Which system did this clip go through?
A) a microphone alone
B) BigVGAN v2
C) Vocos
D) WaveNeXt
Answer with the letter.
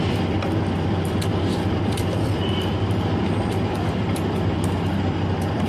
B